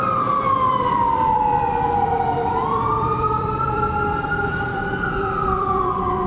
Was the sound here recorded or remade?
remade